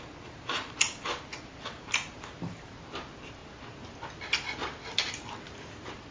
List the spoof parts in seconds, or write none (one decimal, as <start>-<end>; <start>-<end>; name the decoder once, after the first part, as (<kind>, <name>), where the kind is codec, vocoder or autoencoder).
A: 0.0-3.4 (vocoder, BigVGAN v2); 5.3-6.1